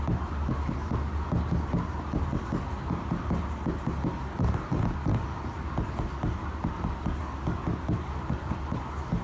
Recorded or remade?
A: recorded